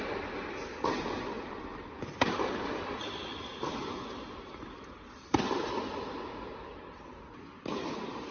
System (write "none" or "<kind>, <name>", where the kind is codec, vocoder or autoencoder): none